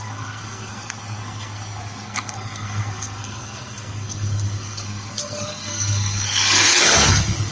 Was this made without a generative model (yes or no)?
no